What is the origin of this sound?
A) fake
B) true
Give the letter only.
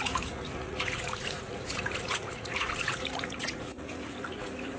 A